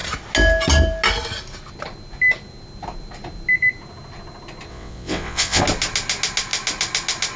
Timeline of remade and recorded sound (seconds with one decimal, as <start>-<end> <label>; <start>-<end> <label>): 0.0-4.7 recorded; 4.7-5.6 remade; 5.6-7.4 recorded